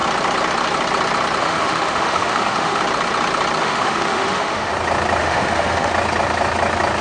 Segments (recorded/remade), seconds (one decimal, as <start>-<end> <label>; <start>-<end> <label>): 0.0-1.4 recorded; 1.4-2.8 remade; 2.8-3.6 recorded; 3.6-4.7 remade; 4.7-5.2 recorded; 5.2-5.9 remade; 5.9-7.0 recorded